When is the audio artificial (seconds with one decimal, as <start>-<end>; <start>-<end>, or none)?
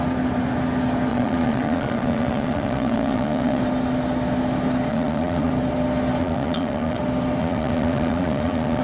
1.1-3.6; 4.9-5.5; 6.2-7.0; 7.4-8.8